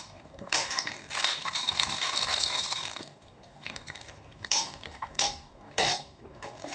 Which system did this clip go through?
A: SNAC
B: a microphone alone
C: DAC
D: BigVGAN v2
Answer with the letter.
C